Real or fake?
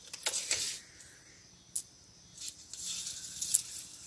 real